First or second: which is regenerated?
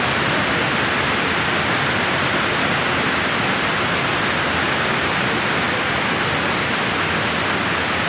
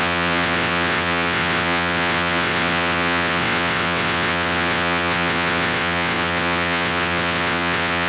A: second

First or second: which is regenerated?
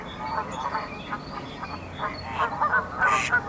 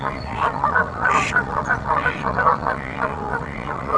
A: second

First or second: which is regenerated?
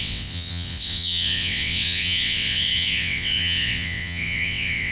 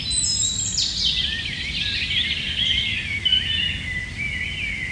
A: first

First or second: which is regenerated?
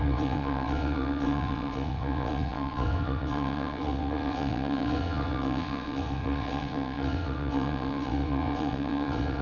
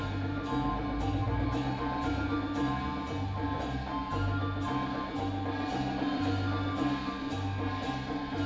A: first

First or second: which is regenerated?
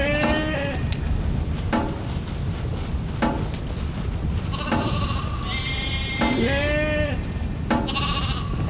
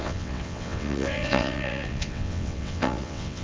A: second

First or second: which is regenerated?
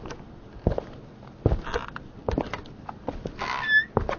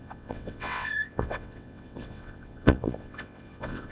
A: second